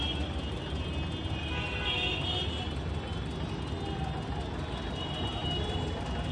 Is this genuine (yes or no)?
yes